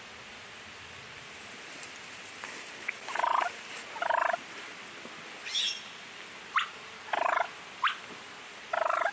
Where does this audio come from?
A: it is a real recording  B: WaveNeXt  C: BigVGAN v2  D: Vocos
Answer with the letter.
A